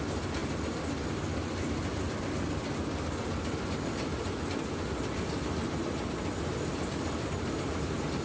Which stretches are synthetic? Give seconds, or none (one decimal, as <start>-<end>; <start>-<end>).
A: none